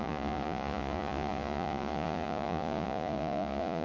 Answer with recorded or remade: remade